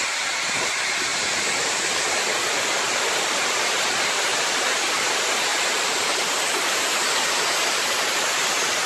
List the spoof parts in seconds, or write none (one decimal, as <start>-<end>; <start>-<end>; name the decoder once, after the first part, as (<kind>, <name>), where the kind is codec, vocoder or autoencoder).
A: none